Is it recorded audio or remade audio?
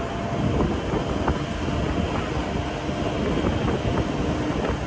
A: recorded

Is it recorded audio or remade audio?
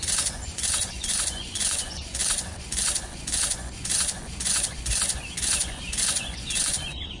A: remade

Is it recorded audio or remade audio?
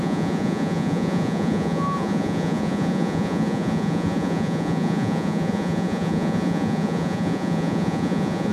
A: remade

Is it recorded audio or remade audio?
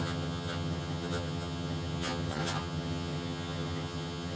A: remade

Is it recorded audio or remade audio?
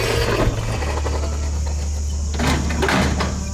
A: recorded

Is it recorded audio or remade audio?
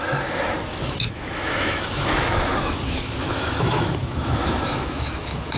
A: remade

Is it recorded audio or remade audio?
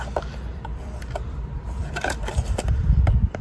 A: remade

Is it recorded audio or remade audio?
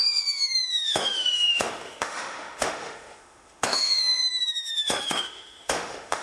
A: remade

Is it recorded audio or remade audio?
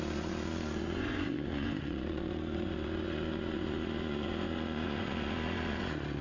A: remade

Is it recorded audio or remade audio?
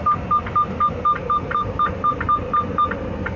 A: recorded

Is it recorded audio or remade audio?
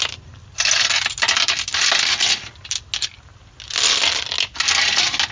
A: recorded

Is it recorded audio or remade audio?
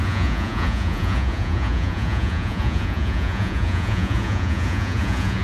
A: remade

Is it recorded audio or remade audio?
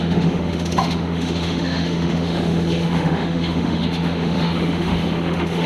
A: remade